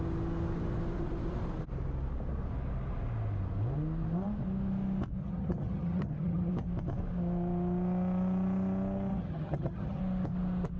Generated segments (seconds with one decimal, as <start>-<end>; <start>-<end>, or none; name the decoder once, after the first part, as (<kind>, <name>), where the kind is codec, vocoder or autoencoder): 5.2-6.5 (vocoder, HiFi-GAN); 9.1-10.0